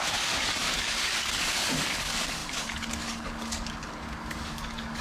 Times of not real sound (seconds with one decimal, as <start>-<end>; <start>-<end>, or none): 0.0-5.0